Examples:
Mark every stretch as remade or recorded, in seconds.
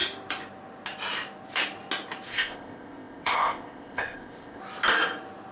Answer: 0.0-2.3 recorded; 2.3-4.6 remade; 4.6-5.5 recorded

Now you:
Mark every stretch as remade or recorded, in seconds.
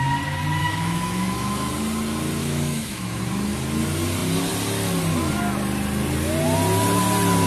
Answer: 0.0-0.6 recorded; 0.6-1.7 remade; 1.7-2.4 recorded; 2.4-3.2 remade; 3.2-7.5 recorded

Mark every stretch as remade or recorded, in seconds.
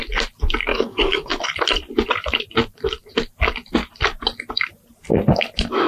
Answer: 0.0-0.7 recorded; 0.7-1.3 remade; 1.3-5.9 recorded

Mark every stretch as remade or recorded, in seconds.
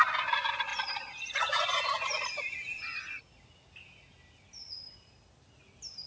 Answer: 0.0-6.1 recorded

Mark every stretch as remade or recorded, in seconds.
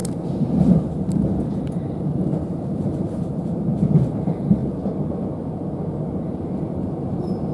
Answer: 0.0-4.6 remade; 4.6-6.0 recorded; 6.0-7.5 remade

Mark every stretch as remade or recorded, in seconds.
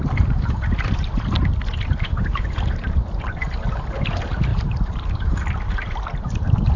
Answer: 0.0-1.9 recorded; 1.9-3.4 remade; 3.4-4.5 recorded; 4.5-5.1 remade; 5.1-6.8 recorded